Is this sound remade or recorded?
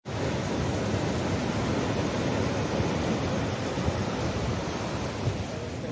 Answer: recorded